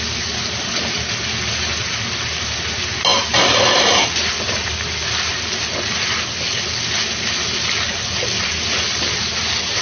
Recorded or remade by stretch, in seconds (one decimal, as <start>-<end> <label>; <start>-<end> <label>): 0.0-9.8 recorded

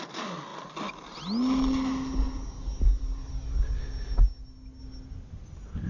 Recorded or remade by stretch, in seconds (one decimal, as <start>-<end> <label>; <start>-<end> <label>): 0.0-5.9 recorded

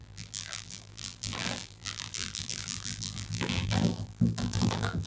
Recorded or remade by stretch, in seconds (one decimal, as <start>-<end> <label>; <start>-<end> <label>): 0.0-5.1 remade

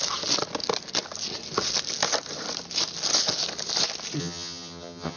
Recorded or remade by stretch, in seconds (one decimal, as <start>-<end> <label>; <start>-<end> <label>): 0.0-4.2 recorded; 4.2-5.2 remade

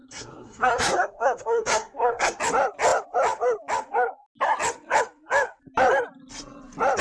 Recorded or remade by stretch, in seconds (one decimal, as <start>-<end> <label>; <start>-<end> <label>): 0.0-2.4 remade; 2.4-7.0 recorded

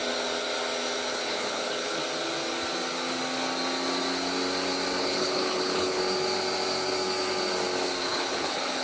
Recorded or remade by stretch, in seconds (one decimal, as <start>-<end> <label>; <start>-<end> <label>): 0.0-1.1 recorded; 1.1-2.0 remade; 2.0-5.0 recorded; 5.0-6.0 remade; 6.0-8.0 recorded; 8.0-8.8 remade